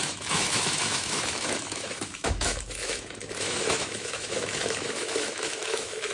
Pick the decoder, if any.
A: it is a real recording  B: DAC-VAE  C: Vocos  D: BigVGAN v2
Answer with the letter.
B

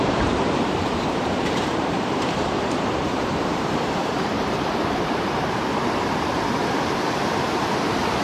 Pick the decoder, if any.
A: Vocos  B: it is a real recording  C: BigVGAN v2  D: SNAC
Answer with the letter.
C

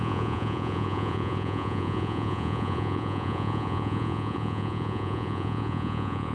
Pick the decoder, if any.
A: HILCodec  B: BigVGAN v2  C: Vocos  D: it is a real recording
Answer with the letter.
C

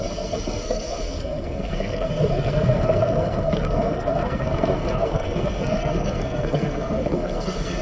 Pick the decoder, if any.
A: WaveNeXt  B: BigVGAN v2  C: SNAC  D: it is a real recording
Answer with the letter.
C